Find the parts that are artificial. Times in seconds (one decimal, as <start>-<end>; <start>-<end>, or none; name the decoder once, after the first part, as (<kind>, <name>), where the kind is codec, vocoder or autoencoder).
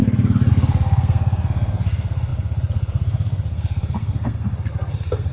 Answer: 0.5-5.3 (codec, SNAC)